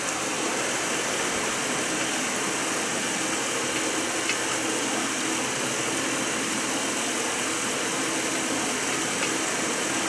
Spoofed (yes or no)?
no